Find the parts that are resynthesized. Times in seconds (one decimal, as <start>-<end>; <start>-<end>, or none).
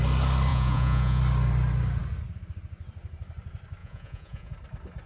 0.5-1.2; 3.8-4.5